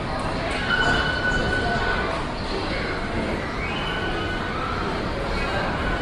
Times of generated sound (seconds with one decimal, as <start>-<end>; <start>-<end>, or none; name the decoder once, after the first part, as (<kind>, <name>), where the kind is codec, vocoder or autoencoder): none